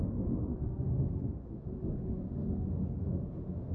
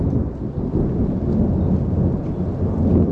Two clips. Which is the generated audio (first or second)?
first